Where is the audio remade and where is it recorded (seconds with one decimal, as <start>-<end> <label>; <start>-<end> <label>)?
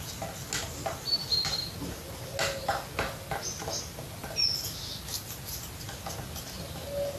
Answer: 0.0-7.2 recorded